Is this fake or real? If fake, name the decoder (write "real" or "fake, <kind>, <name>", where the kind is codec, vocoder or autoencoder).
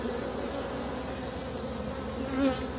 real